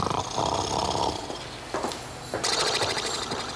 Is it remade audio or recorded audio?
recorded